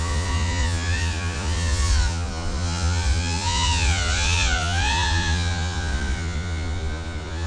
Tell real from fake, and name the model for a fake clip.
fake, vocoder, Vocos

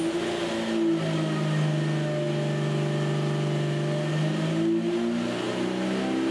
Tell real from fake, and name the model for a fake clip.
real